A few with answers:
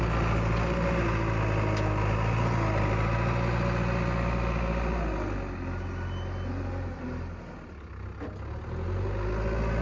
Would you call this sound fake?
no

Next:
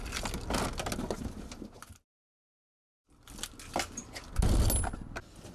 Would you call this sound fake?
no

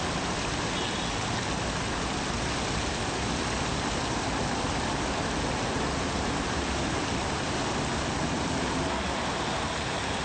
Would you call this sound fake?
no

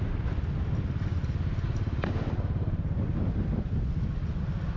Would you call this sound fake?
no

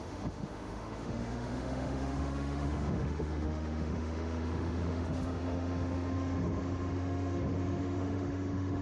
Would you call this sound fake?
yes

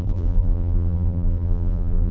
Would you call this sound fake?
yes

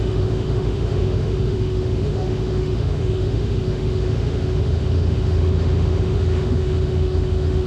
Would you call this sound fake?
yes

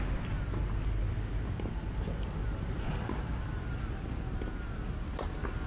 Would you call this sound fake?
no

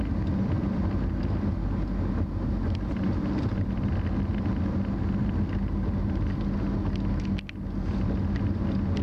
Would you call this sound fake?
no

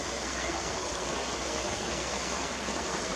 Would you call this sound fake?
yes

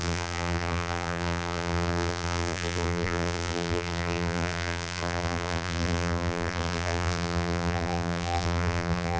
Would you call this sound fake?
yes